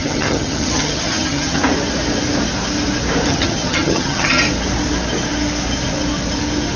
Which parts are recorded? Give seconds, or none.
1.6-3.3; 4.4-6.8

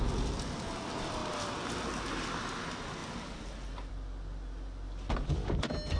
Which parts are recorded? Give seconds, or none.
0.0-6.0

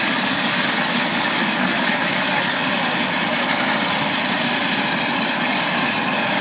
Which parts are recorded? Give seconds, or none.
2.6-5.1

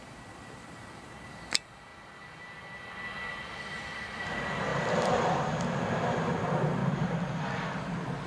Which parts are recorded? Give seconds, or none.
1.9-3.6; 6.8-7.8

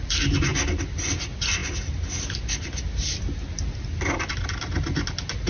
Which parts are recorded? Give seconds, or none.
0.0-5.5

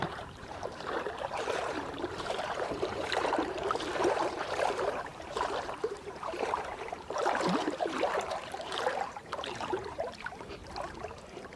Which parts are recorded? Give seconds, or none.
10.6-11.6

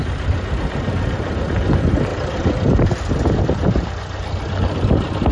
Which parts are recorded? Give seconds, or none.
0.0-5.3